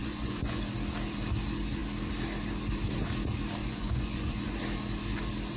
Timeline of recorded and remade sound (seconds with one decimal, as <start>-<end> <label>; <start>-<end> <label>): 0.0-0.6 remade; 0.6-3.6 recorded; 3.6-4.6 remade; 4.6-5.6 recorded